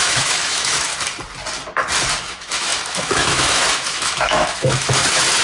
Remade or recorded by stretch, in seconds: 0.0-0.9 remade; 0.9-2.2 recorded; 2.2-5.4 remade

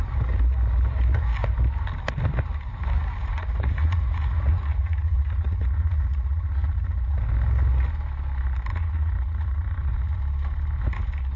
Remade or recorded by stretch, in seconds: 0.0-3.2 recorded; 3.2-7.2 remade; 7.2-8.7 recorded; 8.7-10.2 remade; 10.2-11.4 recorded

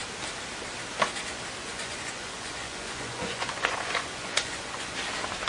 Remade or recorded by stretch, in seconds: 0.0-1.6 recorded; 1.6-4.9 remade; 4.9-5.5 recorded

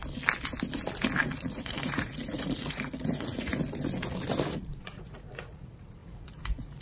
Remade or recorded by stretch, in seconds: 0.0-1.2 recorded; 1.2-3.5 remade; 3.5-4.5 recorded; 4.5-6.8 remade

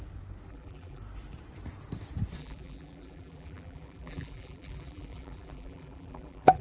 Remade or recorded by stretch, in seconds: 0.0-0.5 recorded; 0.5-1.0 remade; 1.0-2.4 recorded; 2.4-6.6 remade

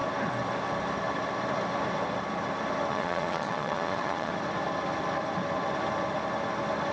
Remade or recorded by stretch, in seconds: 0.0-2.9 recorded; 2.9-4.3 remade; 4.3-6.9 recorded

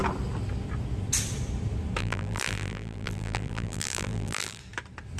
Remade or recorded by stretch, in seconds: 0.0-2.0 recorded; 2.0-4.6 remade; 4.6-5.2 recorded